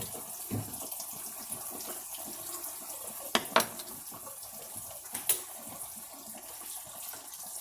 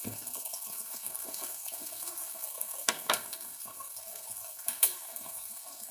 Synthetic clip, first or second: second